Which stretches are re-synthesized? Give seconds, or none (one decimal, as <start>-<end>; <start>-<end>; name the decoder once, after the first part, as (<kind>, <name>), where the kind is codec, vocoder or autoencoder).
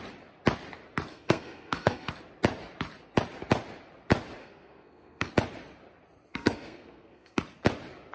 1.1-2.1 (codec, SNAC); 4.4-5.3; 6.3-7.4